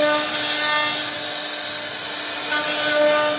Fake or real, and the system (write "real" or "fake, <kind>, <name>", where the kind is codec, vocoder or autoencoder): real